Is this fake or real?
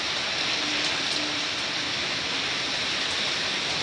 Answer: real